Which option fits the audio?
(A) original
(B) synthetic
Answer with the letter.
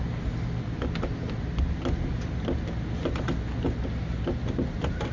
A